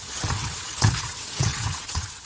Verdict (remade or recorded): remade